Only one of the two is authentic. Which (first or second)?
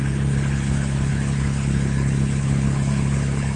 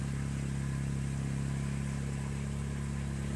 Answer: second